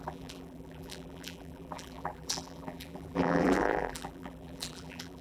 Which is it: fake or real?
fake